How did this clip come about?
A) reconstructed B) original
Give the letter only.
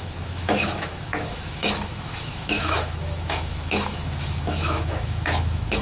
A